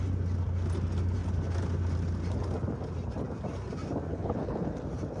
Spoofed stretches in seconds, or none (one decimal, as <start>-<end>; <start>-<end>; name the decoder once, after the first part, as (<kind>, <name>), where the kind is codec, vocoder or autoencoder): 4.1-4.8 (codec, HILCodec)